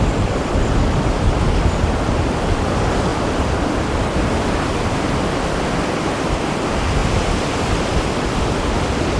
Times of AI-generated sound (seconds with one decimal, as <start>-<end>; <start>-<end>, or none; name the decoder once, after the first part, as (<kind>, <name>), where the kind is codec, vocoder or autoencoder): 0.0-3.1 (vocoder, BigVGAN v2); 6.3-9.2